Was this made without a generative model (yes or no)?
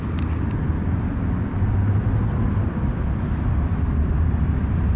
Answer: yes